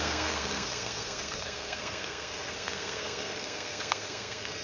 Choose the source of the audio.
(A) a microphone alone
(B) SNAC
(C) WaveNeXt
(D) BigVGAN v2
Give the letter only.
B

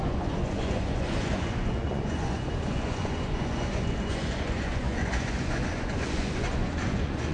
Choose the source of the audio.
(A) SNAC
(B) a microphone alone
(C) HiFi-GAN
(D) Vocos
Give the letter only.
D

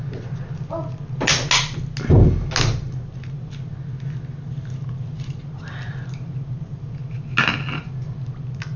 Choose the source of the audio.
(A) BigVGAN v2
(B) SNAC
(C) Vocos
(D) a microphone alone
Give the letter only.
D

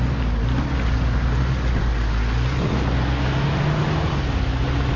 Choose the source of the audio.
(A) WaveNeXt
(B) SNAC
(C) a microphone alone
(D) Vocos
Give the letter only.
C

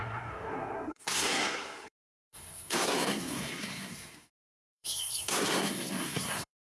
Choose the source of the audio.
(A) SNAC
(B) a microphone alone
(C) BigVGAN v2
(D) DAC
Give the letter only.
A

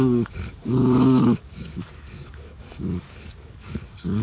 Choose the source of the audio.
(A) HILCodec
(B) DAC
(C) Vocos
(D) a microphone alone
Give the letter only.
B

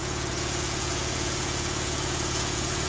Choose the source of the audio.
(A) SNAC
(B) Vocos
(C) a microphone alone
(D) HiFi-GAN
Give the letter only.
B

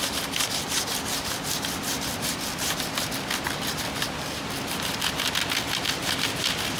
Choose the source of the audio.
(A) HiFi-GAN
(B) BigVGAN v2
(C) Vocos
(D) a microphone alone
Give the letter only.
D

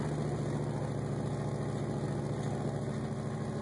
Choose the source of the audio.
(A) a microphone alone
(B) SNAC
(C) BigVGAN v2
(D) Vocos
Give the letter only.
A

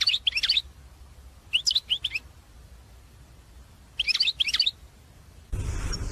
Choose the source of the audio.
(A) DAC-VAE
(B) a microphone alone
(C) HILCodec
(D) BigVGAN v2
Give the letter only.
D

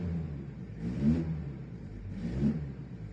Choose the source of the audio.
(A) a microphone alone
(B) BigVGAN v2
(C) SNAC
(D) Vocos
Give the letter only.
B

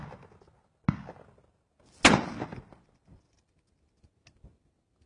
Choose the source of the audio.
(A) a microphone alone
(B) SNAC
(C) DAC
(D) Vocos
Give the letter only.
A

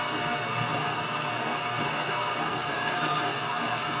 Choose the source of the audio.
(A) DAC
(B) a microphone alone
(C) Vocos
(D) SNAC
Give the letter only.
D